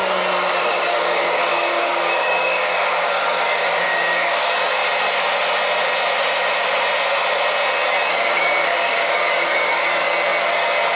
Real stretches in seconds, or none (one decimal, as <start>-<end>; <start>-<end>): 0.0-0.6; 4.8-8.1; 10.1-11.0

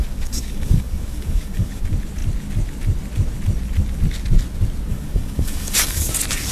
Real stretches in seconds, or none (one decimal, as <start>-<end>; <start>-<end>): 1.8-4.9; 6.1-6.5

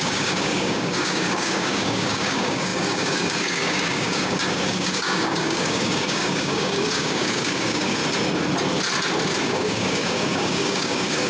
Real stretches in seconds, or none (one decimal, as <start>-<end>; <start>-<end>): 8.0-9.4

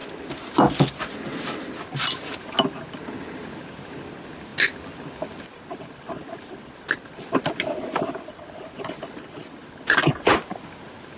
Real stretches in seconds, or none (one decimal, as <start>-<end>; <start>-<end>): 0.0-11.2

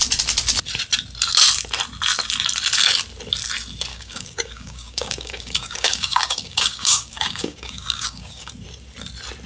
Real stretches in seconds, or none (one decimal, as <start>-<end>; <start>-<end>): 0.0-3.9; 8.5-9.5